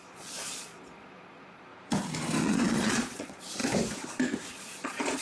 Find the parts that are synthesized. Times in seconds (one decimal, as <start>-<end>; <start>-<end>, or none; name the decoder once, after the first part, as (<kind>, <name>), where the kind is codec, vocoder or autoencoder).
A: 0.0-1.7 (vocoder, Vocos); 2.4-3.6; 4.5-5.2